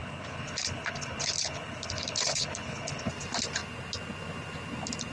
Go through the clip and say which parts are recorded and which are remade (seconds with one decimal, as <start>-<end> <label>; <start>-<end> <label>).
0.0-3.1 remade; 3.1-5.1 recorded